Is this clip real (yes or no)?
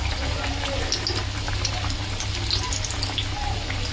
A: yes